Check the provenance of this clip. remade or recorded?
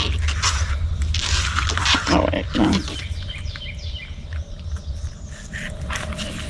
recorded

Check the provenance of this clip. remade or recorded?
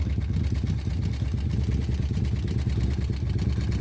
recorded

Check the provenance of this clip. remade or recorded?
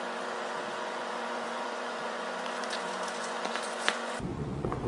remade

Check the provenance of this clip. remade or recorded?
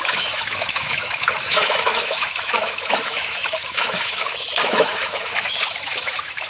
remade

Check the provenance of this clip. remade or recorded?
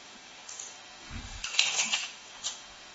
remade